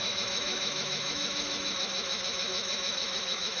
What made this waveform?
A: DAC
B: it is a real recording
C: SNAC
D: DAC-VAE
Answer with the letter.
D